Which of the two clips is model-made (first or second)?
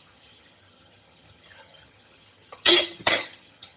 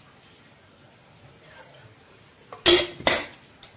first